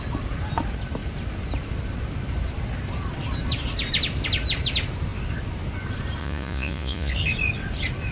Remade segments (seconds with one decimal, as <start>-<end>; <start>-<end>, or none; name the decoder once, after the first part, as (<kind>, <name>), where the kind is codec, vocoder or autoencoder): 6.2-7.1 (vocoder, Vocos)